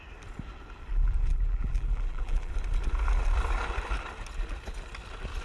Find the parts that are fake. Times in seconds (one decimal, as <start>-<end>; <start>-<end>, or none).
0.9-2.5